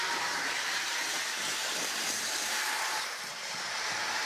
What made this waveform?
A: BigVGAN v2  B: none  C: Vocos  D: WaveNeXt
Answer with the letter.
A